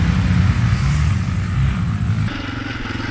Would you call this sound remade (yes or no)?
no